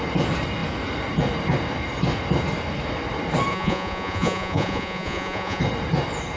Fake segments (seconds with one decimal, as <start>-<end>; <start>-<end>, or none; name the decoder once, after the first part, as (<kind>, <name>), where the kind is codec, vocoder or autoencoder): 3.5-5.6 (vocoder, Vocos)